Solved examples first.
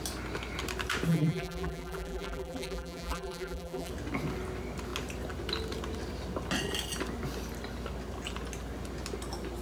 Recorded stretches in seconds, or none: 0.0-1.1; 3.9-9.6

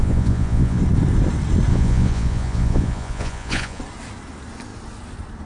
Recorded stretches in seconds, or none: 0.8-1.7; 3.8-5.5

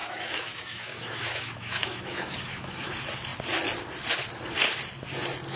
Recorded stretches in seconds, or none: 2.9-5.6

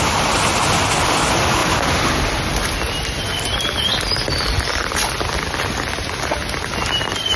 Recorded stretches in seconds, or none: 0.0-7.4

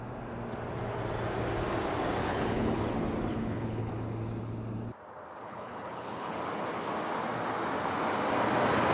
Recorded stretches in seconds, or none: 0.0-2.2; 2.8-3.3; 3.9-5.4; 6.4-8.9